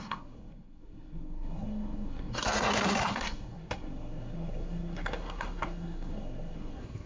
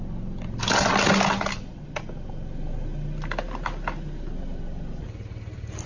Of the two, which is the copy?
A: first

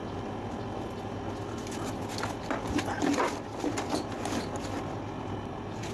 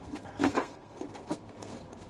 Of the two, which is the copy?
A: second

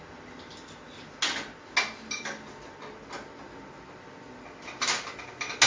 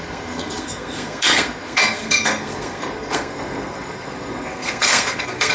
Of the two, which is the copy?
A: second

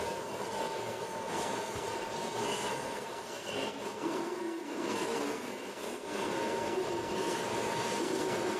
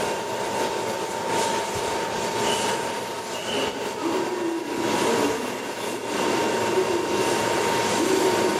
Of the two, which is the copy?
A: first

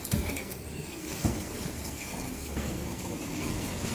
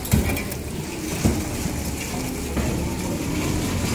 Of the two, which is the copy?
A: first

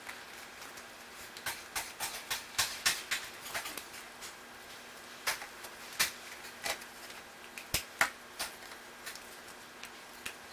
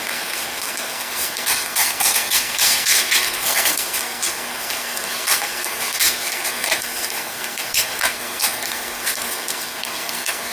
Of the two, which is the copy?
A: second